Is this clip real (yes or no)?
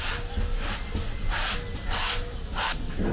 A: yes